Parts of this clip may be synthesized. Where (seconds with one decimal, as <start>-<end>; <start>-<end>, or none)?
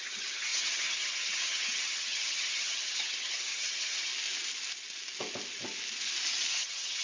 0.0-4.1; 6.5-7.0